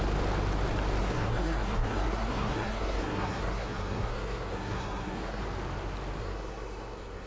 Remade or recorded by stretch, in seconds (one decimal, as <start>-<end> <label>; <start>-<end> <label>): 0.0-1.0 recorded; 1.0-5.4 remade; 5.4-6.2 recorded; 6.2-7.3 remade